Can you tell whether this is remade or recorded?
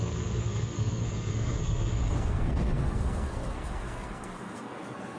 remade